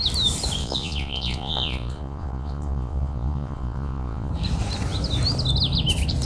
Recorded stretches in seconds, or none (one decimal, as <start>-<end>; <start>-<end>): 0.0-0.6; 4.3-6.2